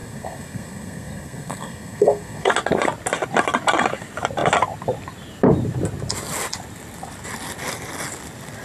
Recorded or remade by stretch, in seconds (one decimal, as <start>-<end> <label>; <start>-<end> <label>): 0.0-2.5 remade; 2.5-8.6 recorded